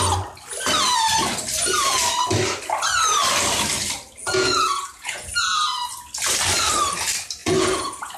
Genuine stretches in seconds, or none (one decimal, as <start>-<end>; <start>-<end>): 0.0-4.2; 5.3-7.4